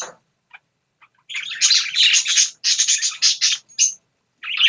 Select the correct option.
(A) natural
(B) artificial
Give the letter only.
A